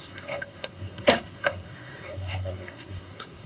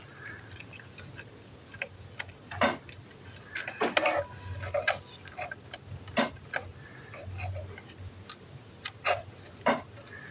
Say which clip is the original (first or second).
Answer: second